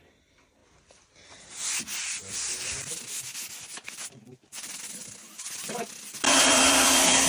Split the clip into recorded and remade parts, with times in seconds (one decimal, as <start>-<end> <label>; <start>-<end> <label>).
0.0-0.6 remade; 0.6-1.8 recorded; 1.8-7.3 remade